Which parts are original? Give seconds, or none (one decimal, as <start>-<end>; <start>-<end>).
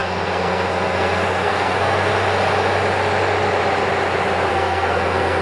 2.1-4.5